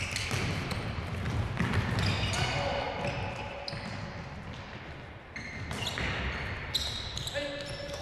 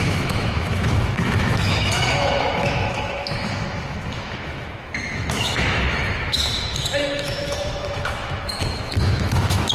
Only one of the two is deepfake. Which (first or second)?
second